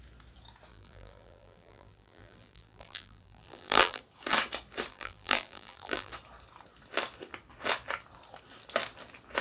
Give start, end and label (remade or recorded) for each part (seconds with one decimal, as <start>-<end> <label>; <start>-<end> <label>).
0.0-0.7 recorded; 0.7-4.0 remade; 4.0-4.9 recorded; 4.9-6.1 remade; 6.1-9.4 recorded